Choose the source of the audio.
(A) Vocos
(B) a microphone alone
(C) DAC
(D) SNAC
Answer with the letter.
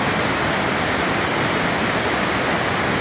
B